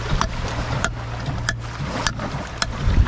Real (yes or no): yes